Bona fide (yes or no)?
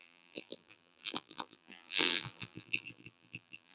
no